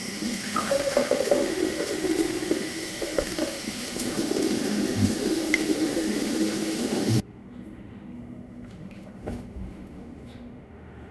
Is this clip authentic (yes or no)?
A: no